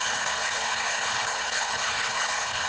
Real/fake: fake